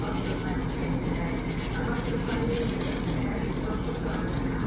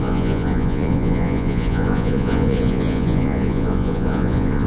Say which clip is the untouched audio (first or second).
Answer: first